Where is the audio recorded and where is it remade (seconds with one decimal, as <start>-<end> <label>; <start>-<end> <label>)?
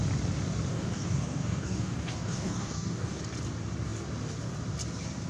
0.0-0.7 recorded; 0.7-3.2 remade; 3.2-5.3 recorded